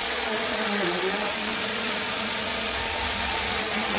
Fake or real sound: fake